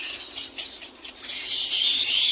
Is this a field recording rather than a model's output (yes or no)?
yes